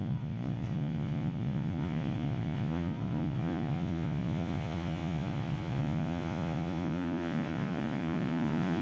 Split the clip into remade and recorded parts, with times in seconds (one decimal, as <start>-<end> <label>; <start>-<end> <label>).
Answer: 0.0-8.8 remade